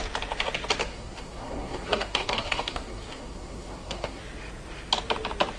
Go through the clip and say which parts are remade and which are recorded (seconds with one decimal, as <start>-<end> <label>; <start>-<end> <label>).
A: 0.0-0.8 recorded; 0.8-4.2 remade; 4.2-5.6 recorded